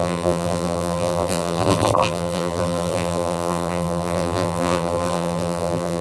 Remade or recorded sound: remade